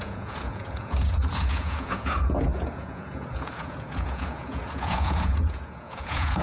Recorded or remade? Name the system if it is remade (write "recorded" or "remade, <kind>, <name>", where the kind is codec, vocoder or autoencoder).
remade, vocoder, Vocos